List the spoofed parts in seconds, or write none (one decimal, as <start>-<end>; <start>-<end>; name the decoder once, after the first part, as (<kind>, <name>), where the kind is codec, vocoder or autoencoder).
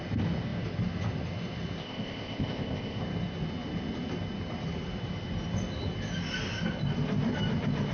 1.8-3.0 (codec, ZipCodec)